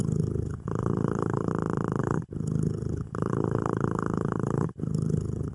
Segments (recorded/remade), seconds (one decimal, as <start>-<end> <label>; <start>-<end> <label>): 0.0-1.5 remade; 1.5-2.0 recorded; 2.0-5.5 remade